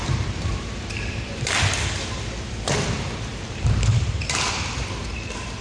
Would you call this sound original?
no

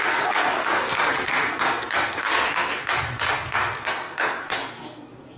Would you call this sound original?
no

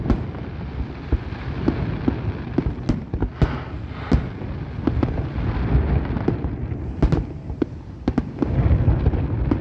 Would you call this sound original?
yes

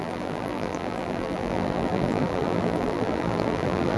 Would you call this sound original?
no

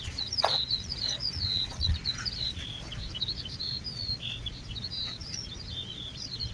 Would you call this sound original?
no